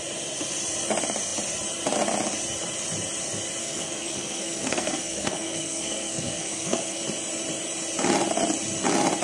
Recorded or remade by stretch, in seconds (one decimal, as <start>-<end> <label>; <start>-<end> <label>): 0.0-3.6 recorded; 3.6-7.0 remade; 7.0-9.2 recorded